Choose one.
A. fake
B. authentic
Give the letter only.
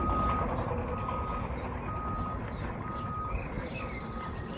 B